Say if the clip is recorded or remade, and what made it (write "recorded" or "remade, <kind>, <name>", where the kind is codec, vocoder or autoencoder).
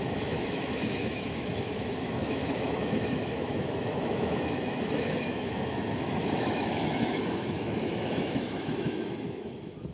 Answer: remade, autoencoder, DAC-VAE